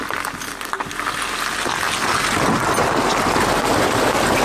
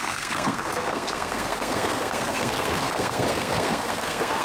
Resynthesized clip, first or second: second